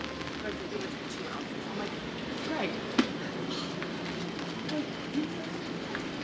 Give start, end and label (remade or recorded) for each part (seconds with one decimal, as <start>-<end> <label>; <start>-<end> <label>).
0.0-6.2 recorded